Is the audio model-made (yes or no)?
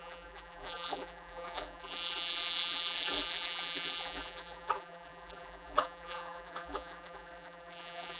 yes